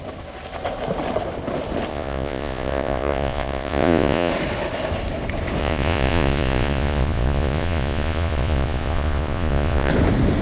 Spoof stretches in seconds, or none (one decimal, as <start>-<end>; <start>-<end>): 1.9-4.3; 5.6-9.9